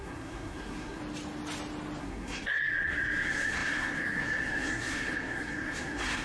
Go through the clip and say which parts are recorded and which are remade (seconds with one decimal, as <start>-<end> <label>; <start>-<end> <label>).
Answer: 0.0-1.0 remade; 1.0-2.0 recorded; 2.0-6.2 remade